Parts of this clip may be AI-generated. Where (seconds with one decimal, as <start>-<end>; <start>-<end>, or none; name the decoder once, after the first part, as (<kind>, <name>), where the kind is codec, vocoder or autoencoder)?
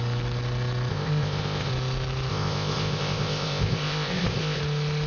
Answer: 0.9-1.7 (codec, ZipCodec); 2.3-4.6